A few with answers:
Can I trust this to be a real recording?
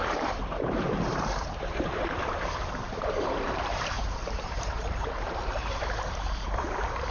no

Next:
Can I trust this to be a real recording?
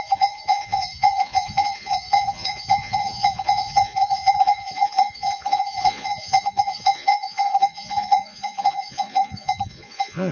no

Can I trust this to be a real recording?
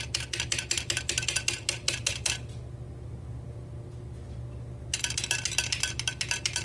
yes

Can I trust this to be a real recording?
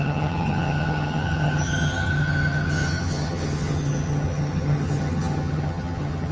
no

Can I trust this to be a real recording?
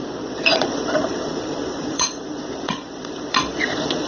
no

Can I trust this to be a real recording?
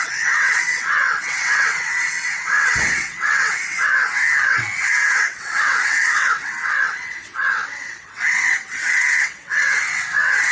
no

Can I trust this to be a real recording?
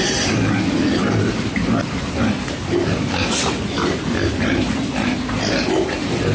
yes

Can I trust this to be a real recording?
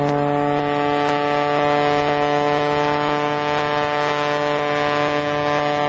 yes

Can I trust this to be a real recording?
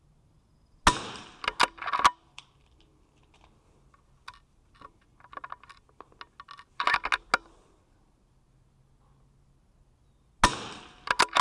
yes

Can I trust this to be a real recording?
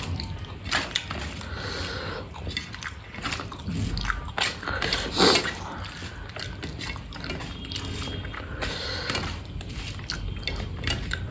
yes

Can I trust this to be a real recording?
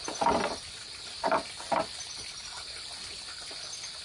yes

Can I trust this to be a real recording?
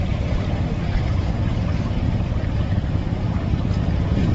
yes